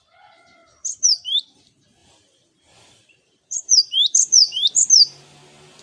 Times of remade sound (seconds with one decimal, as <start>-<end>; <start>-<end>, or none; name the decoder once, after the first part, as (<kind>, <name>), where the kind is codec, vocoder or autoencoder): 0.6-1.6 (vocoder, BigVGAN v2); 2.0-4.9